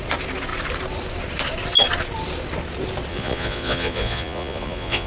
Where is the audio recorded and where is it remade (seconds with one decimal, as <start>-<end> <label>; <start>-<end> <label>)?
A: 0.0-3.1 recorded; 3.1-5.1 remade